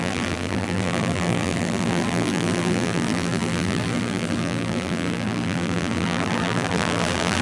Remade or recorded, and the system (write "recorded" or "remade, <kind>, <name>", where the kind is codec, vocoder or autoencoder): remade, vocoder, BigVGAN v2